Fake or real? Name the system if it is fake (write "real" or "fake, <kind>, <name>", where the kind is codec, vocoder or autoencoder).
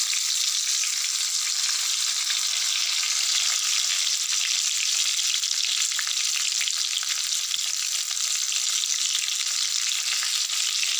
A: real